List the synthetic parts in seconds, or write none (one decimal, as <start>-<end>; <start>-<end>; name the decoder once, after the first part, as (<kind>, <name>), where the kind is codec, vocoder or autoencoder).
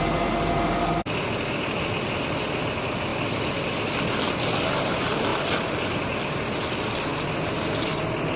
none